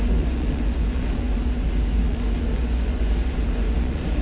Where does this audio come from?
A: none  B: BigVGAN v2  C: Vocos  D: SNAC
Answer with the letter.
C